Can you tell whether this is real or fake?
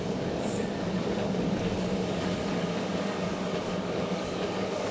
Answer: fake